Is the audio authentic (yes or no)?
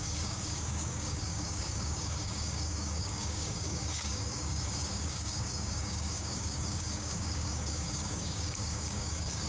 no